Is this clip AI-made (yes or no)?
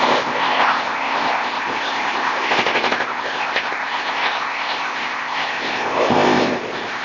yes